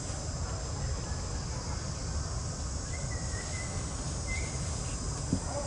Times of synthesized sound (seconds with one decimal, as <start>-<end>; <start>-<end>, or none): none